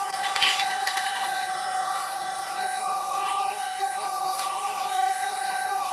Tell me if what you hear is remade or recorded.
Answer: remade